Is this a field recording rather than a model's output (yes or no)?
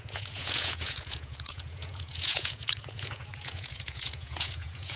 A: no